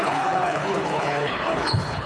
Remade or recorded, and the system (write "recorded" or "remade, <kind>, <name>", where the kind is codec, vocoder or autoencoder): remade, codec, HILCodec